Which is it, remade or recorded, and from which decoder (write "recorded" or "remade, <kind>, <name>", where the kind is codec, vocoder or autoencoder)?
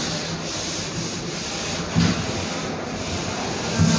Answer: recorded